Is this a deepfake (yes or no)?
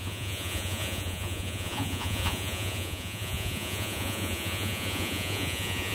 yes